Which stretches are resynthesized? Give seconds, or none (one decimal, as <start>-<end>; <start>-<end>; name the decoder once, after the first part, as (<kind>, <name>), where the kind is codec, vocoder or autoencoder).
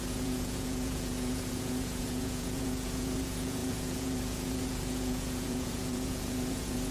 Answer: 0.0-6.9 (vocoder, Vocos)